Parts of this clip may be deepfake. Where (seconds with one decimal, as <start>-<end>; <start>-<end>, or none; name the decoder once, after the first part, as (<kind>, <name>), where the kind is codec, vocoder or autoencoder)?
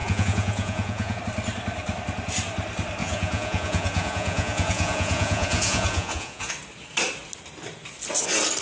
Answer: 0.0-1.2 (vocoder, Vocos); 3.0-6.5